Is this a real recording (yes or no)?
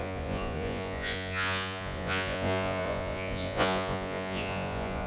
no